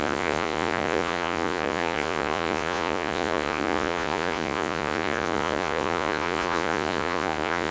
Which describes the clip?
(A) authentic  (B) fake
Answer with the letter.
B